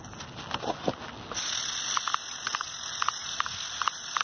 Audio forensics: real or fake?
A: real